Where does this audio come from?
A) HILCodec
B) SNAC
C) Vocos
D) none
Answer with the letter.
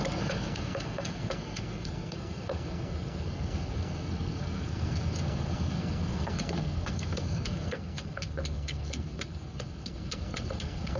B